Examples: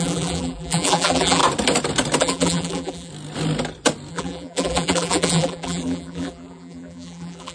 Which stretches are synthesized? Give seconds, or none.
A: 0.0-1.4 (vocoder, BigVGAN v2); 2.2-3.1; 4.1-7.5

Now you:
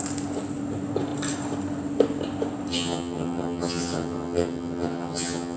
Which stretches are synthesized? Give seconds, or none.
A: 2.7-5.6 (vocoder, HiFi-GAN)

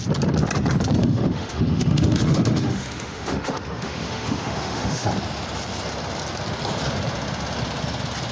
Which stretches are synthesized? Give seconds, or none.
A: 1.0-5.1 (autoencoder, DAC-VAE)

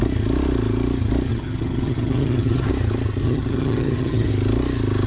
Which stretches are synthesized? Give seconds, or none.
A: 1.3-2.7 (vocoder, HiFi-GAN); 3.2-4.3

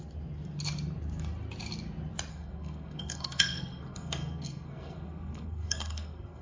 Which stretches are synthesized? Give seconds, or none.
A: 2.3-6.4 (codec, SNAC)

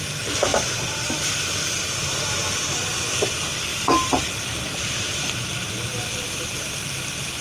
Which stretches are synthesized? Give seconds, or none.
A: 0.5-1.4 (vocoder, BigVGAN v2); 3.7-7.4

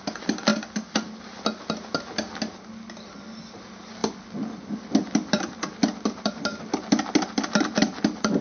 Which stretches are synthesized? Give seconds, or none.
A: none

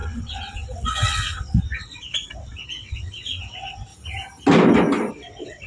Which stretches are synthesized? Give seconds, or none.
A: 0.0-3.9 (vocoder, WaveNeXt); 5.1-5.7